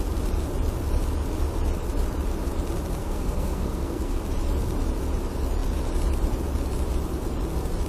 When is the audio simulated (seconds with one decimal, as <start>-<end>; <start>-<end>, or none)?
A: 3.0-4.2